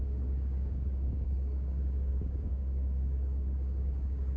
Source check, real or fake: fake